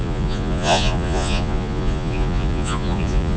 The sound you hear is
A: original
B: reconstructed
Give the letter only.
B